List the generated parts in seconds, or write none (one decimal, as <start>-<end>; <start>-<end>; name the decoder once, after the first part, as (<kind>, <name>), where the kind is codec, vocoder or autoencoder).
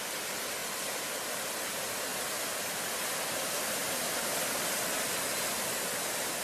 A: none